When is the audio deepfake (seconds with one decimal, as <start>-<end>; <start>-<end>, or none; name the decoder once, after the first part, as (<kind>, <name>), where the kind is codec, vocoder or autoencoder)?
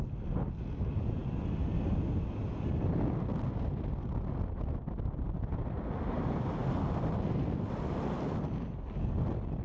none